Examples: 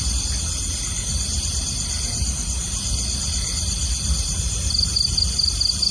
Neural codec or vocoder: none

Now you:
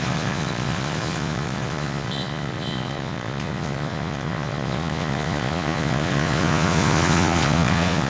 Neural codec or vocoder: vocoder, Vocos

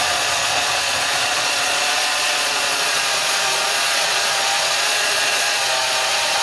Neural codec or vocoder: vocoder, Vocos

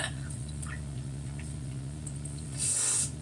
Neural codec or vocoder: vocoder, Vocos